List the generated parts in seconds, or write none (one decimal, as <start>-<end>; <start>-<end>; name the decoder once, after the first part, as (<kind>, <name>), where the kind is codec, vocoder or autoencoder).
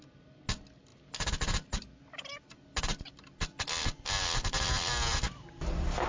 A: none